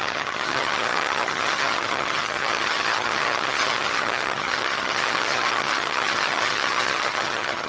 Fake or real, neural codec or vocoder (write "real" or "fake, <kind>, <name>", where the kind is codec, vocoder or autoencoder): fake, vocoder, HiFi-GAN